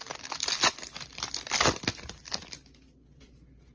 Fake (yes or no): no